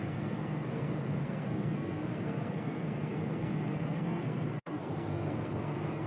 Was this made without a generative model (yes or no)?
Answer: no